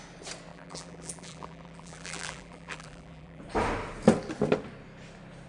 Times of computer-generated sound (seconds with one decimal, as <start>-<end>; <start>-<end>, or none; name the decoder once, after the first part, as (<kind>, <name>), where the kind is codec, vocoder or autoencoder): 0.5-3.4 (vocoder, BigVGAN v2)